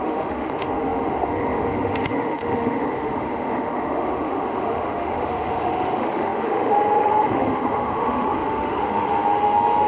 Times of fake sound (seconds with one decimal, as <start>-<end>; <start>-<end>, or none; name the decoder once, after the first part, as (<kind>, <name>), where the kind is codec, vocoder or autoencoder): 0.0-9.9 (autoencoder, DAC-VAE)